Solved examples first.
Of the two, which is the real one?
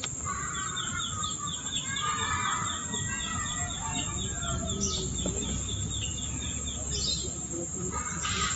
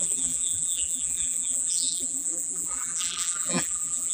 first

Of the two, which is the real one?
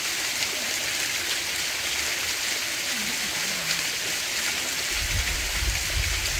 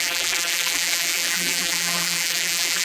first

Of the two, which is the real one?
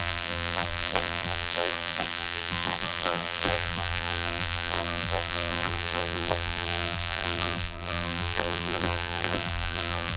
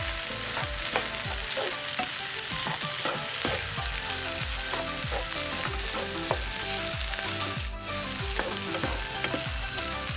second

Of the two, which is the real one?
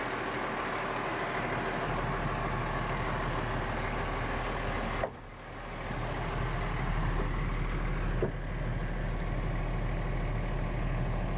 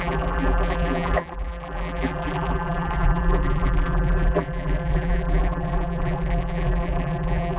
first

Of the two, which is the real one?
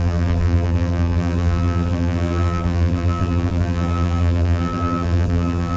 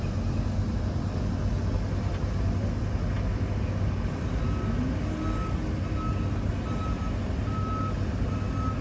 second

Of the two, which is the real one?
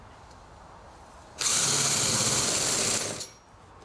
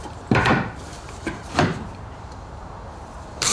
first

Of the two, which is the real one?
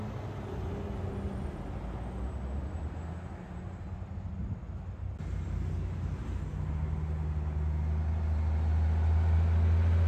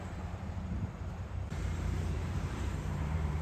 first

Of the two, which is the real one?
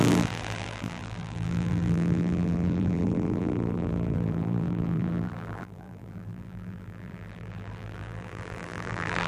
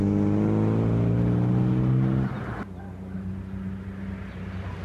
second